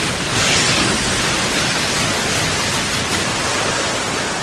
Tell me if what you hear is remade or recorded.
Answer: recorded